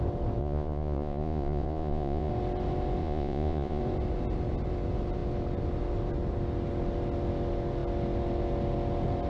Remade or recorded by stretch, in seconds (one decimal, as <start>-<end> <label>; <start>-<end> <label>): 0.0-0.4 recorded; 0.4-2.3 remade; 2.3-3.0 recorded; 3.0-3.8 remade; 3.8-9.3 recorded